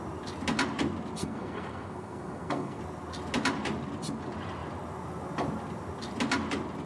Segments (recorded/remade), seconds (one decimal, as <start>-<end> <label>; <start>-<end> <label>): 0.0-1.2 recorded; 1.2-2.8 remade; 2.8-6.9 recorded